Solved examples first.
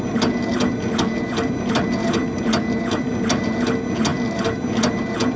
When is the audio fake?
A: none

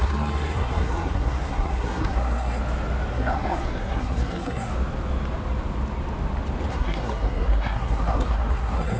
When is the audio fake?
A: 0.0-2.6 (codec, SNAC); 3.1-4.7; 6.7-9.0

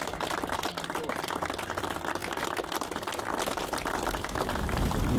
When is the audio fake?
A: 0.0-2.2 (vocoder, BigVGAN v2); 4.6-5.2

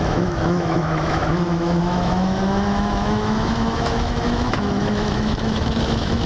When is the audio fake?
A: 0.0-6.3 (autoencoder, DAC-VAE)

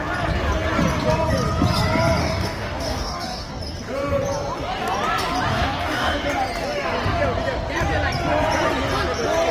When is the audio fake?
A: 2.2-3.5 (codec, DAC); 5.5-6.2

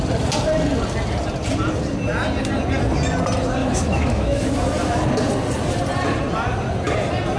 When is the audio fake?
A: 3.6-4.5 (autoencoder, DAC-VAE)

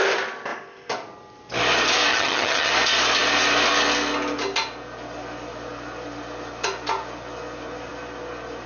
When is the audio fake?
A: 2.1-2.7 (vocoder, HiFi-GAN)

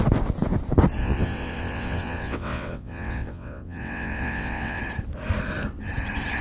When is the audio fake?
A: 1.0-4.8 (vocoder, WaveNeXt)